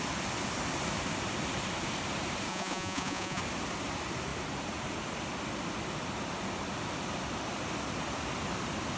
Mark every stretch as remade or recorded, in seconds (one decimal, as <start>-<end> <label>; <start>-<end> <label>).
0.0-2.5 recorded; 2.5-3.4 remade; 3.4-9.0 recorded